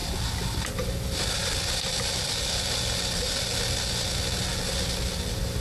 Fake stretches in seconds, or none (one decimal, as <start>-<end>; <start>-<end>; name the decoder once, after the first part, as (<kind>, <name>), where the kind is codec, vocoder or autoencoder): 0.0-3.3 (vocoder, BigVGAN v2)